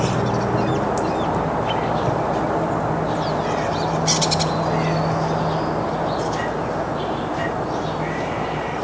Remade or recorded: recorded